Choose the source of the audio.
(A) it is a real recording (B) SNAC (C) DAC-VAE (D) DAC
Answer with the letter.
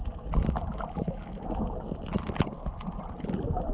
A